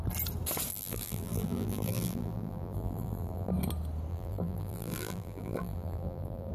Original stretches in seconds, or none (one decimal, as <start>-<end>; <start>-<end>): 0.0-0.7; 3.5-4.1